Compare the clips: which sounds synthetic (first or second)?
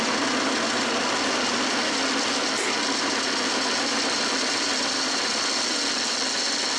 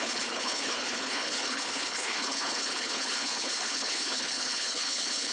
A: second